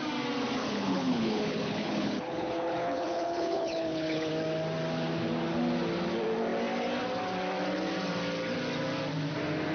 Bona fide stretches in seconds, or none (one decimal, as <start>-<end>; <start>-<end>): 0.0-0.6; 4.3-9.7